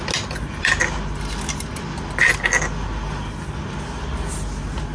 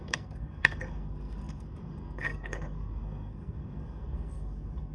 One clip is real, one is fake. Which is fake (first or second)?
second